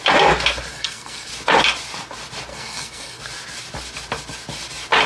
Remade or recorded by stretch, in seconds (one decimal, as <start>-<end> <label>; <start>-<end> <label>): 0.0-0.7 recorded; 0.7-1.3 remade; 1.3-2.5 recorded; 2.5-3.2 remade; 3.2-5.1 recorded